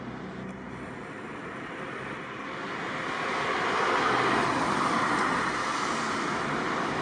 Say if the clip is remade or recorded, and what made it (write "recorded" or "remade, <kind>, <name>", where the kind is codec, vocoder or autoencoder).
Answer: recorded